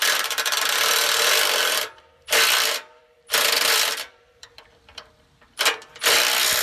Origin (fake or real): fake